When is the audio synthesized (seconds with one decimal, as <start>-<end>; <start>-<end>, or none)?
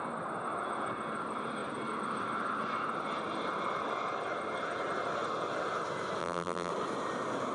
6.2-6.7